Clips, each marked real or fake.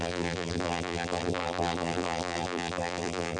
fake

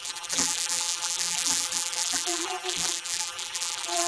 fake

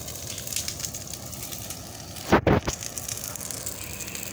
real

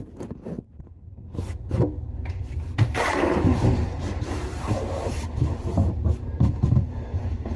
fake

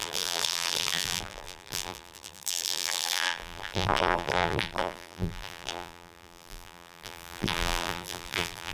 fake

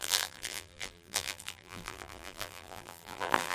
fake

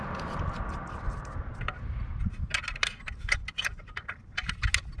real